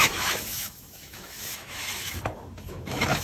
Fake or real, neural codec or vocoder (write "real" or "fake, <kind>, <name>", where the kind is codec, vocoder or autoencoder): fake, autoencoder, DAC-VAE